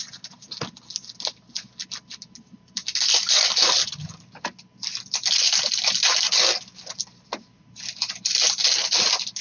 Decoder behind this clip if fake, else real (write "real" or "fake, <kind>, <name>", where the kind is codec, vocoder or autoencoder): real